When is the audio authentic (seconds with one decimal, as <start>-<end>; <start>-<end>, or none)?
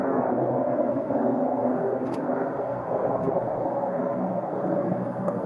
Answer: none